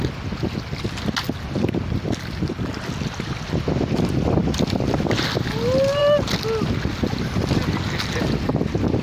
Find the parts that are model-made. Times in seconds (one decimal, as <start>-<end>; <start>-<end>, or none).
none